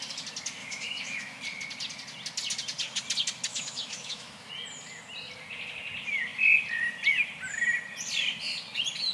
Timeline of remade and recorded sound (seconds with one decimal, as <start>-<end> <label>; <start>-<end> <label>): 0.0-0.6 recorded; 0.6-1.4 remade; 1.4-3.5 recorded; 3.5-4.5 remade; 4.5-9.1 recorded